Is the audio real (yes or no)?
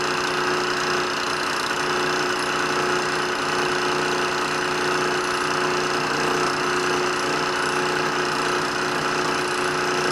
yes